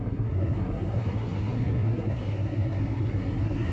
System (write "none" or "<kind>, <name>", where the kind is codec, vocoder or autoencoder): codec, SNAC